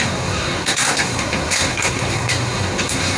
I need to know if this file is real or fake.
fake